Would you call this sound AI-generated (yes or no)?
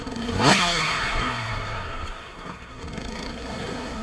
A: yes